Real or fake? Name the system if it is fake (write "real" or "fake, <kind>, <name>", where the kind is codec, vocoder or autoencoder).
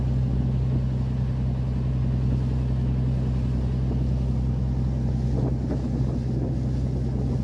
real